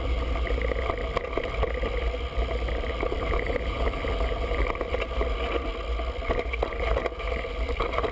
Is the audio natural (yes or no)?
yes